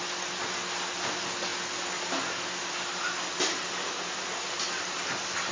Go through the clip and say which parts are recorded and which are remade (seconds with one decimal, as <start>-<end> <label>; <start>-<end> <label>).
0.0-5.5 recorded